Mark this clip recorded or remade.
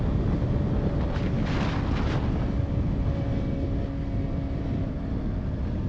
recorded